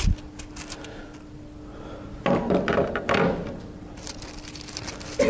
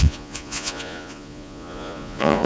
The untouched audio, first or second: first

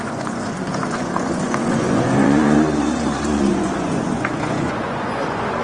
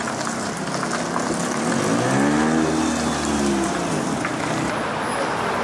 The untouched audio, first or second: second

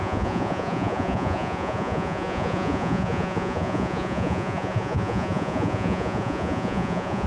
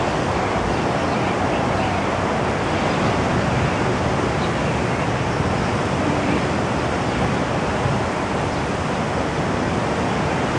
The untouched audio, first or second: second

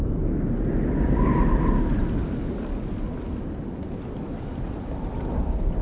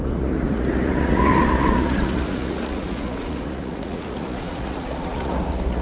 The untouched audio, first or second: first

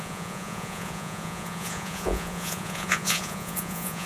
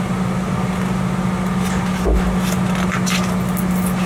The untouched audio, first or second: second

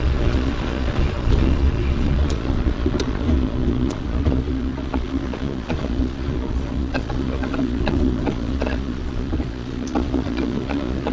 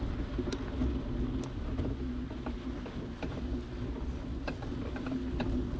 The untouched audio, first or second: second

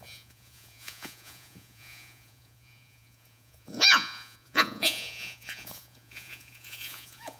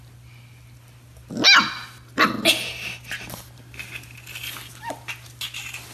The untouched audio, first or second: second